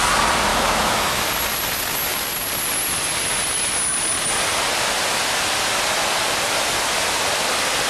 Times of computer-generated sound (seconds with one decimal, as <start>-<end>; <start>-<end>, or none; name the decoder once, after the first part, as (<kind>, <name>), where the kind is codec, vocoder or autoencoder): 0.5-1.2 (autoencoder, DAC-VAE)